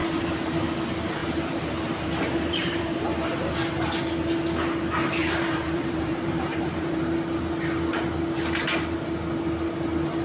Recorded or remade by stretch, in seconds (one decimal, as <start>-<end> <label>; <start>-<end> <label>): 0.0-0.6 remade; 0.6-1.2 recorded; 1.2-4.0 remade; 4.0-5.2 recorded; 5.2-7.0 remade; 7.0-10.2 recorded